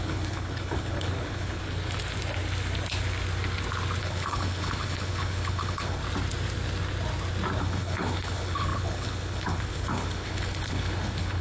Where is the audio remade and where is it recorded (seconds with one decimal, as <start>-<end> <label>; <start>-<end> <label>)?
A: 0.0-1.6 remade; 1.6-4.0 recorded; 4.0-6.0 remade; 6.0-7.6 recorded; 7.6-11.4 remade